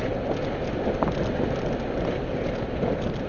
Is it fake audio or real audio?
real